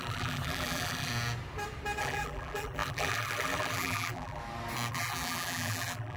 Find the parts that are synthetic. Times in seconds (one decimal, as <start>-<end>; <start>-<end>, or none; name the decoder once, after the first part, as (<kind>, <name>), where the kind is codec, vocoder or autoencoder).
0.0-1.1 (vocoder, BigVGAN v2); 2.0-4.4; 4.9-6.2